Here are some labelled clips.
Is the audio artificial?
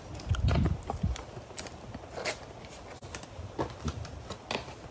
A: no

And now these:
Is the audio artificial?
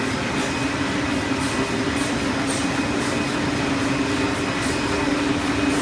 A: no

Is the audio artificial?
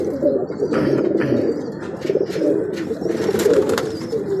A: no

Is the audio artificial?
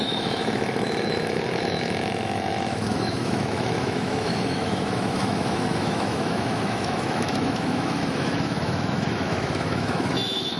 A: yes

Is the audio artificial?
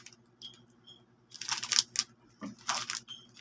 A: no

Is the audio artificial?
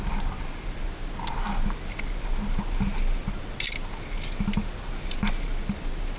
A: no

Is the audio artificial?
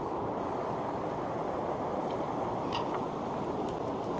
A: no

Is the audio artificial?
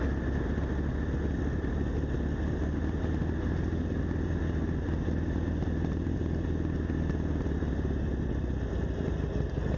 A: no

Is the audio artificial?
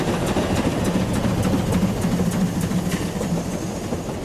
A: no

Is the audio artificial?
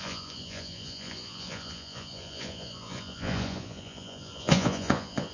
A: yes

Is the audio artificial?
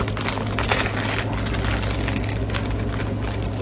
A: no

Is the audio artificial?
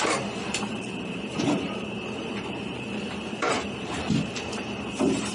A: yes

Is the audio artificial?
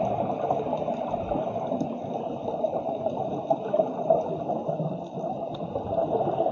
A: no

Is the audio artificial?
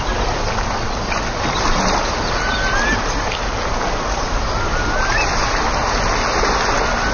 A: no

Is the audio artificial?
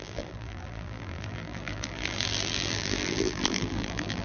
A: yes